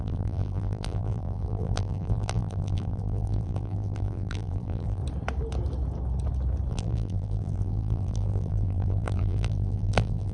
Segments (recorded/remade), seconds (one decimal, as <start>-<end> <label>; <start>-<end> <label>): 0.0-5.0 remade; 5.0-6.7 recorded; 6.7-10.3 remade